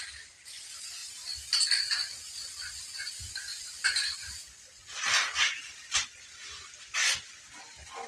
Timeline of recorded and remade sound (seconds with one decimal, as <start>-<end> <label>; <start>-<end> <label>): 0.0-3.5 recorded; 3.5-4.3 remade; 4.3-8.1 recorded